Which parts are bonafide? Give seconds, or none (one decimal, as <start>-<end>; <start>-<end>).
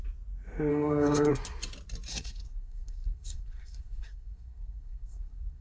0.0-0.7; 1.3-2.1